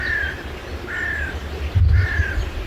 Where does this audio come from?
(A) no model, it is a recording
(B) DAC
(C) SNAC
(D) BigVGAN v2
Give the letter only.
A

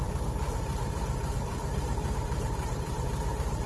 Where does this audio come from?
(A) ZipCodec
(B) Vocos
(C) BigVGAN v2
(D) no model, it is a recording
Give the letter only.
C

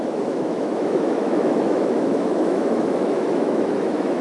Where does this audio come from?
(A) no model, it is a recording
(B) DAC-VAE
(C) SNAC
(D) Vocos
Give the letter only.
B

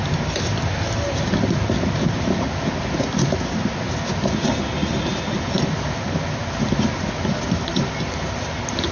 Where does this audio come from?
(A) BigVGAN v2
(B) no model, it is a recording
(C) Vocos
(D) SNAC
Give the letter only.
B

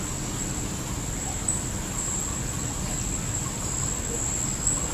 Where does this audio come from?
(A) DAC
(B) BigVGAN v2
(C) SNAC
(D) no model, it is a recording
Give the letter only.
D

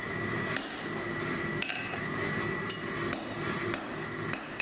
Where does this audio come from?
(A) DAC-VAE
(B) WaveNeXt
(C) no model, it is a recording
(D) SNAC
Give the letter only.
C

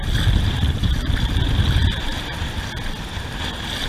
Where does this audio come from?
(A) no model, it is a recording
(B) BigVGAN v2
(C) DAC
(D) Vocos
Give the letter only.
A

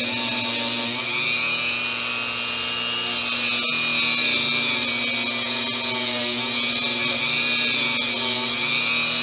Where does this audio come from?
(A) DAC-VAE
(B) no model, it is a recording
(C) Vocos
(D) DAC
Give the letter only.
B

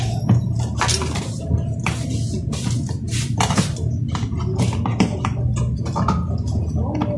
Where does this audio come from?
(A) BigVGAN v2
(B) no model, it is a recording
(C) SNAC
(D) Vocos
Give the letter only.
B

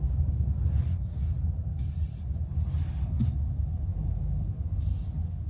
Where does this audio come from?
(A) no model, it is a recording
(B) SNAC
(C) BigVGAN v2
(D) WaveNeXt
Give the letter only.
A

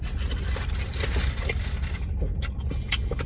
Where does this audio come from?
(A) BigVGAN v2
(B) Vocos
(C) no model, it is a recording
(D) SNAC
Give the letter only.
C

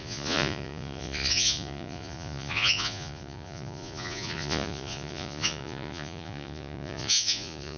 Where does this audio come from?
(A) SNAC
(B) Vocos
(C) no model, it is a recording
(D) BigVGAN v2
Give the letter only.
B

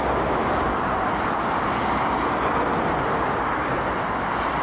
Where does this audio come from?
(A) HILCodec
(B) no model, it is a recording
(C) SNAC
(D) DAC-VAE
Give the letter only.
B